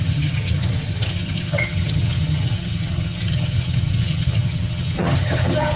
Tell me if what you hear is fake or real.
fake